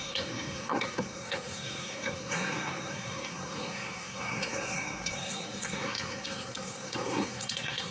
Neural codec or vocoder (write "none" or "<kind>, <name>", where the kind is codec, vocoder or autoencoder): codec, SNAC